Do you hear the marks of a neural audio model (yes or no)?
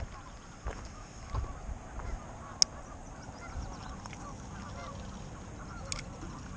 no